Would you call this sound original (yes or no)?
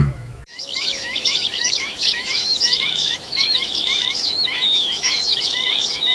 no